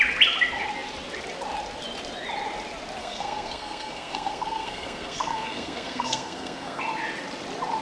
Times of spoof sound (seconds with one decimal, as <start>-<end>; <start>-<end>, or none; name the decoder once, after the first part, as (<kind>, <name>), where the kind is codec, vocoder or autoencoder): 3.0-6.8 (codec, SNAC)